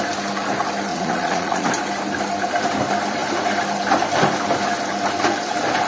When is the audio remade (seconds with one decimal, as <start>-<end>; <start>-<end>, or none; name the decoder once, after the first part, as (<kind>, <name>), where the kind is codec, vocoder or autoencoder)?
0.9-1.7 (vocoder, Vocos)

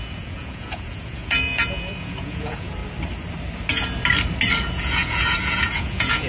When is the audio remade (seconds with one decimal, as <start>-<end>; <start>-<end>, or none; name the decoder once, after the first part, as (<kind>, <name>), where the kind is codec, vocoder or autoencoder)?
0.0-2.8 (vocoder, Vocos); 4.7-6.3

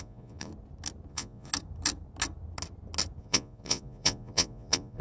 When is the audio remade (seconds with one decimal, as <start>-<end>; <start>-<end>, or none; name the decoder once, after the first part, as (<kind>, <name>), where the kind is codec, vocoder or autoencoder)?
0.0-0.5 (vocoder, Vocos); 1.1-1.5; 3.2-5.0